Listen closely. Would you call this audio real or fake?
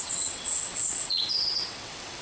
fake